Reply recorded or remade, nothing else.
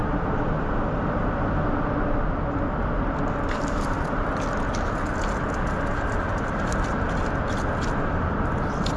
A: recorded